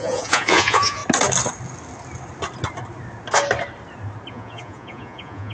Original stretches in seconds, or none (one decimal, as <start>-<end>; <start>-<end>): 1.0-4.3